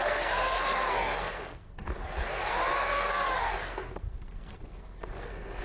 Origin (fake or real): fake